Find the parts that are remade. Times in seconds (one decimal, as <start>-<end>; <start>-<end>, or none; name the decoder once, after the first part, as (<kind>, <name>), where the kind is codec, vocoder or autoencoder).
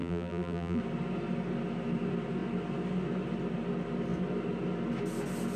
0.0-0.8 (vocoder, BigVGAN v2)